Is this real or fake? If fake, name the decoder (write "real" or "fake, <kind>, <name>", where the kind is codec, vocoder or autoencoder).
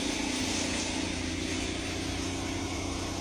real